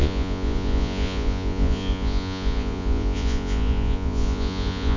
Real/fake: fake